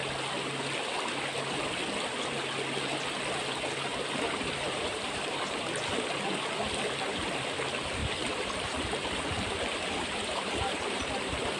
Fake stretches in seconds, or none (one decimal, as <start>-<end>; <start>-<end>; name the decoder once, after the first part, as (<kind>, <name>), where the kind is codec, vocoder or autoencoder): 3.9-5.7 (vocoder, BigVGAN v2); 8.0-11.0